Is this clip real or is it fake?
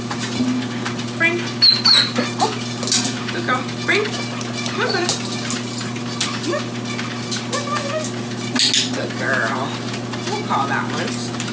real